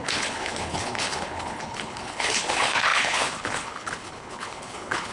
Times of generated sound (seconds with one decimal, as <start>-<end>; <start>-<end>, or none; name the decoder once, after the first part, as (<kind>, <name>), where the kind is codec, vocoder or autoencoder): 0.0-5.1 (codec, HILCodec)